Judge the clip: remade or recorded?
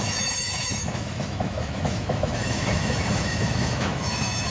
remade